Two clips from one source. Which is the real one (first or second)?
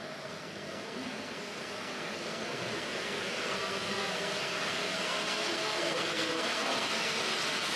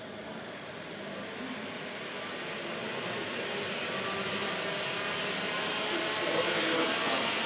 second